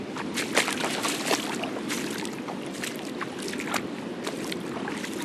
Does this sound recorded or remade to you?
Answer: recorded